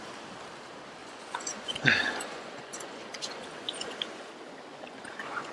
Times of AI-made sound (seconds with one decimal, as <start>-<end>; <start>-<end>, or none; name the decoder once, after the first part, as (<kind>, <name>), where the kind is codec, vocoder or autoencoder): 1.0-4.3 (vocoder, Vocos); 4.7-5.5